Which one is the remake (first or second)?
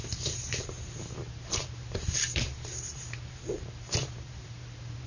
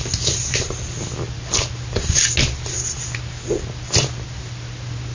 first